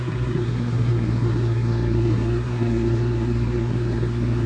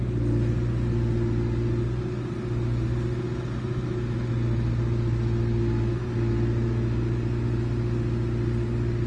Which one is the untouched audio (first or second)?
second